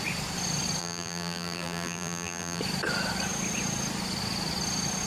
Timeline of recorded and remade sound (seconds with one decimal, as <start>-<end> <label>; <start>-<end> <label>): 0.0-0.8 recorded; 0.8-2.6 remade; 2.6-5.1 recorded

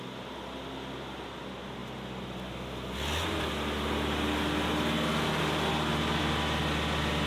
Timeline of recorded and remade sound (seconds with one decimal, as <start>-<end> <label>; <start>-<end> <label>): 0.0-7.3 recorded

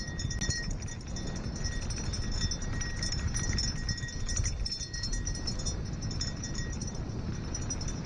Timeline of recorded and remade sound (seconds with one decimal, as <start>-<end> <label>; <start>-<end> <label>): 0.0-8.1 recorded

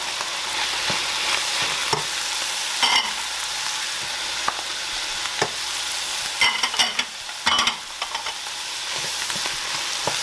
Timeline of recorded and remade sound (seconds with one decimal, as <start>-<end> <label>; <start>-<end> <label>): 0.0-10.2 recorded

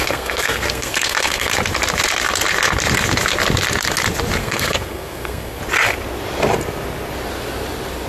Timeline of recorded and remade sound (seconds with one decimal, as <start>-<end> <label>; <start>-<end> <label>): 0.0-1.5 remade; 1.5-4.4 recorded; 4.4-5.6 remade; 5.6-8.1 recorded

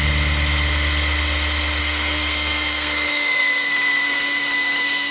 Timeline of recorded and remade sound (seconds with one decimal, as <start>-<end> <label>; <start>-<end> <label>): 0.0-1.8 recorded; 1.8-5.1 remade

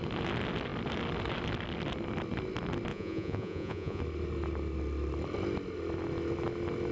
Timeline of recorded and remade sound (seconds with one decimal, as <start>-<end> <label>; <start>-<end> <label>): 0.0-2.9 recorded; 2.9-4.0 remade; 4.0-6.9 recorded

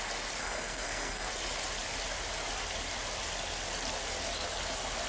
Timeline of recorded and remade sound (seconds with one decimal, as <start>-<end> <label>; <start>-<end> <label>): 0.0-0.4 recorded; 0.4-1.3 remade; 1.3-5.1 recorded